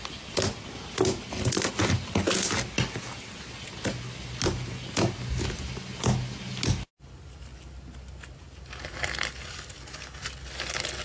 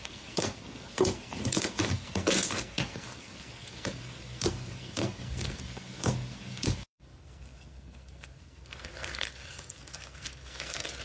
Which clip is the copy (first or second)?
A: second